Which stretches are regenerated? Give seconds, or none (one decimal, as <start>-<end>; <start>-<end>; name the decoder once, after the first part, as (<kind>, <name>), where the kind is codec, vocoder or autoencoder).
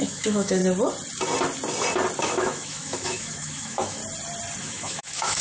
0.0-0.6 (autoencoder, DAC-VAE); 2.2-4.0; 4.6-5.4